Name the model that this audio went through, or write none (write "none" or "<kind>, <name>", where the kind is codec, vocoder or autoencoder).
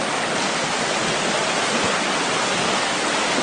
none